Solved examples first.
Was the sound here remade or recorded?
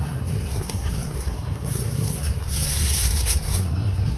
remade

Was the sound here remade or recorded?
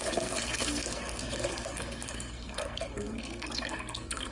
remade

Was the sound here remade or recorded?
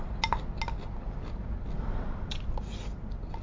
recorded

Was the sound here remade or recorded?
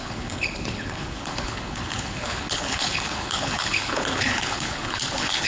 remade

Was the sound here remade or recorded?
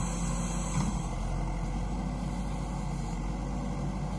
recorded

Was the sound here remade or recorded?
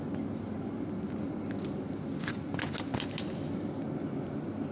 recorded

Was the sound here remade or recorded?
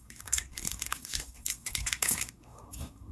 remade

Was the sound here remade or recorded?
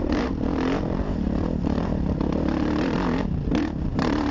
remade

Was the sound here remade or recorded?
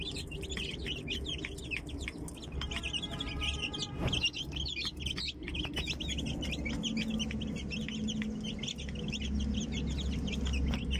recorded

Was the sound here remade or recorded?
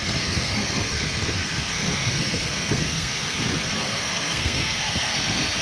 remade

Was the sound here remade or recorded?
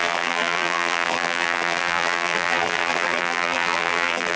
remade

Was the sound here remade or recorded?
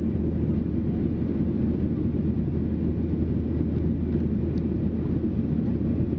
recorded